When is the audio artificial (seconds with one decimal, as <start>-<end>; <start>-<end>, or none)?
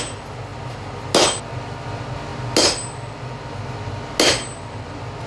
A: none